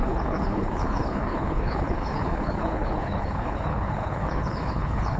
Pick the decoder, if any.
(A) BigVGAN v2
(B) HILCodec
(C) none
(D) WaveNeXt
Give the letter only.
B